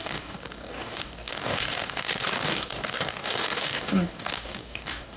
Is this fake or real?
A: fake